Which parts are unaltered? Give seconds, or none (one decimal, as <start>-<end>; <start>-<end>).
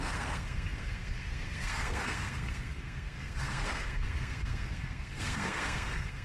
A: none